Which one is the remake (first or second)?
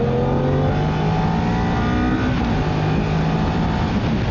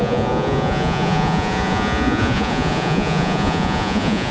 second